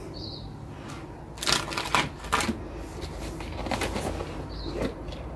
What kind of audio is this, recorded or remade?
recorded